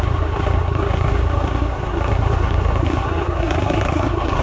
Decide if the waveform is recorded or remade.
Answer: remade